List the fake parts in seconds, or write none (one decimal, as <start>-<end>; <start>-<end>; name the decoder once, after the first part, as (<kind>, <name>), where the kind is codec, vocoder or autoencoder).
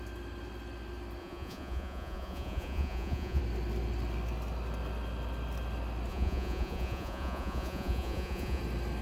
1.2-3.4 (vocoder, Vocos); 6.1-8.6